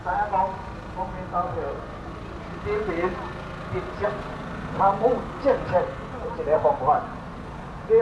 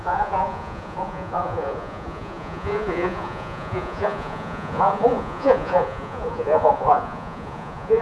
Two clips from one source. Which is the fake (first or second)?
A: second